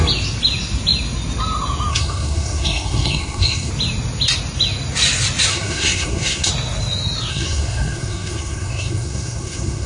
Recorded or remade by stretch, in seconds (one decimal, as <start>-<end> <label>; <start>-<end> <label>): 0.0-1.9 recorded; 1.9-3.7 remade; 3.7-5.5 recorded; 5.5-6.5 remade; 6.5-7.3 recorded; 7.3-9.9 remade